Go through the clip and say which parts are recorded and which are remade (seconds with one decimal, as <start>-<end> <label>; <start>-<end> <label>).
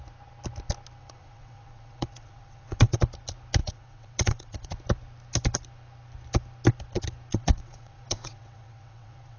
0.0-1.0 recorded; 1.0-3.0 remade; 3.0-3.6 recorded; 3.6-4.7 remade; 4.7-7.3 recorded; 7.3-9.4 remade